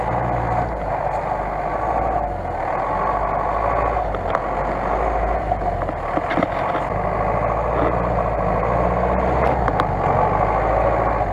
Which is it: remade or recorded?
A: recorded